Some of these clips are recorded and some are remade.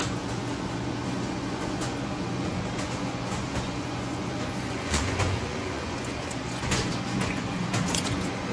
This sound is remade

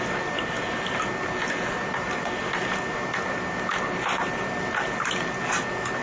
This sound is recorded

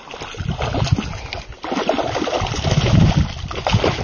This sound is recorded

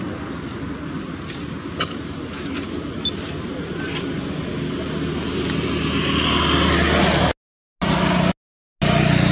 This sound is recorded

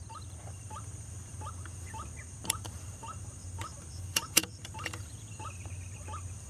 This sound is remade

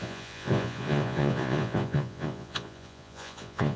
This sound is remade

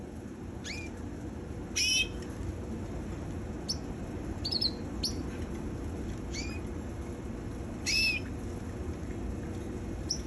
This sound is recorded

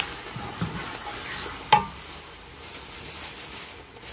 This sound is recorded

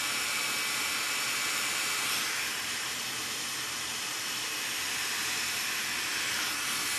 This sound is recorded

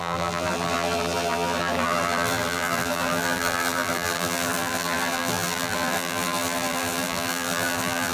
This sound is remade